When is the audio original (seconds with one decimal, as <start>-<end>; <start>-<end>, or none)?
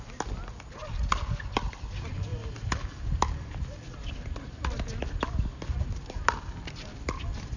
0.0-7.6